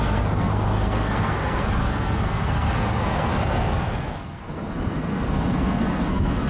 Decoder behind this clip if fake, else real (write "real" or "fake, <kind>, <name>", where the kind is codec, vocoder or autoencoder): fake, codec, SNAC